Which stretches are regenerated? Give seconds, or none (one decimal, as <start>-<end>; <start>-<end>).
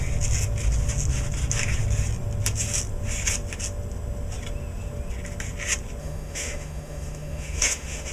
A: 6.0-8.1